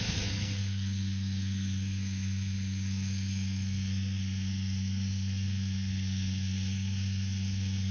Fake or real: fake